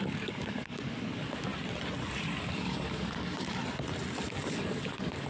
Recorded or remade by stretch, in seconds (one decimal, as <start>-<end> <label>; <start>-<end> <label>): 0.0-1.5 remade; 1.5-2.4 recorded; 2.4-3.6 remade; 3.6-4.4 recorded; 4.4-5.3 remade